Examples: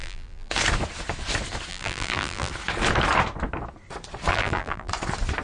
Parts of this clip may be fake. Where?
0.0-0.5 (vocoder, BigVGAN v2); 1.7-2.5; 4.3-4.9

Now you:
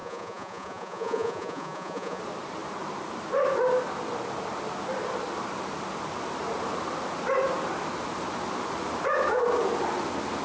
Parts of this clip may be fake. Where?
0.0-2.2 (vocoder, Vocos)

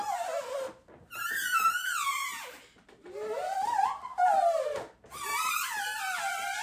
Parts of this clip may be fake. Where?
none

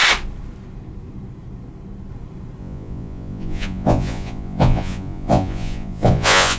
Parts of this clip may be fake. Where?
2.6-6.6 (vocoder, Vocos)